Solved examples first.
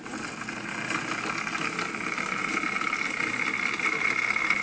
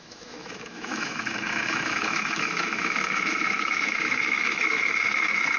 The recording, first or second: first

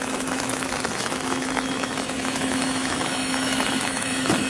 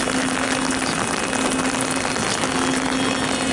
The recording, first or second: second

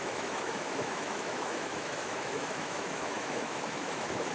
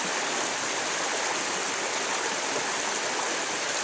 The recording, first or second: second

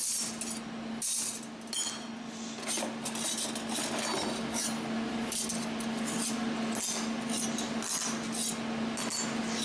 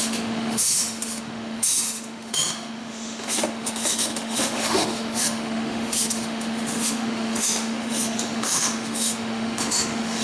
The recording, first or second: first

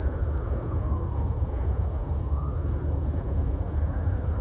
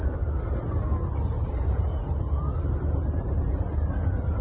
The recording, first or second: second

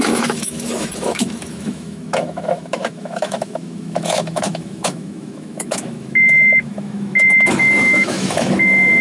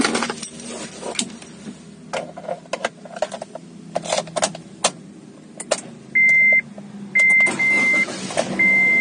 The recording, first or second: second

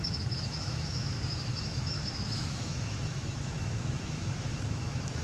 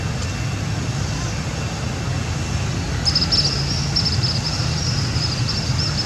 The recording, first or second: second